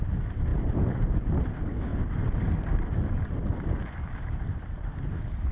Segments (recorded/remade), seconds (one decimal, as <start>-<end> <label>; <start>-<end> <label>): 0.0-0.5 recorded; 0.5-1.4 remade; 1.4-1.9 recorded; 1.9-4.4 remade; 4.4-5.5 recorded